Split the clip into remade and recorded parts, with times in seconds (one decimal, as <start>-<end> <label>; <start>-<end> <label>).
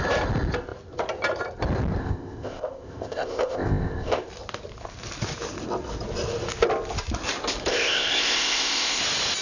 0.0-2.0 recorded; 2.0-4.3 remade; 4.3-7.7 recorded; 7.7-9.0 remade; 9.0-9.4 recorded